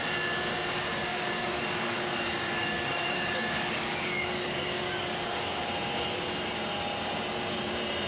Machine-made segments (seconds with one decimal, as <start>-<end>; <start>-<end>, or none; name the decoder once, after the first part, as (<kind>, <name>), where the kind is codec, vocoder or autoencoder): 1.1-5.6 (codec, DAC)